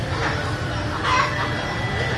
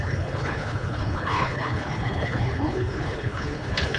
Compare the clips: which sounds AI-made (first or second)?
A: second